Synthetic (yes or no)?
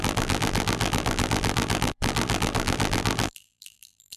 yes